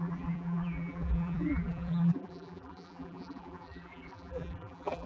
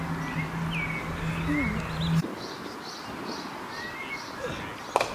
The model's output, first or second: first